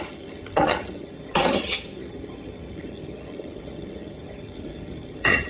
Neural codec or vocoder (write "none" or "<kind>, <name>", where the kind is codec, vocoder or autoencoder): vocoder, HiFi-GAN